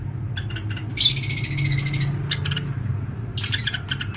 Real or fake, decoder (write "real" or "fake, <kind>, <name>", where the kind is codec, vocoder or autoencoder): real